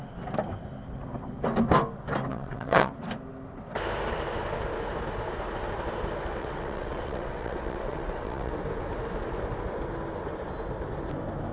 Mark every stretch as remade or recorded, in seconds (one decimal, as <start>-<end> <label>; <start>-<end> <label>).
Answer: 0.0-2.3 recorded; 2.3-2.9 remade; 2.9-6.4 recorded; 6.4-8.5 remade; 8.5-11.5 recorded